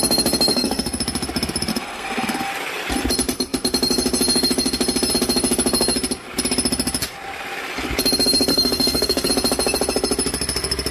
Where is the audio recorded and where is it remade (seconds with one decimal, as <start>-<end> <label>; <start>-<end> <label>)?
0.0-0.5 recorded; 0.5-1.0 remade; 1.0-1.7 recorded; 1.7-2.5 remade; 2.5-8.5 recorded; 8.5-9.3 remade; 9.3-10.9 recorded